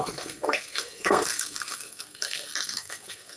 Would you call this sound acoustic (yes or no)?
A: no